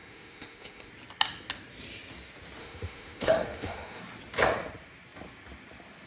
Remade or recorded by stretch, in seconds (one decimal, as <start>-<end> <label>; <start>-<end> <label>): 0.0-0.9 remade; 0.9-2.6 recorded; 2.6-4.0 remade; 4.0-6.1 recorded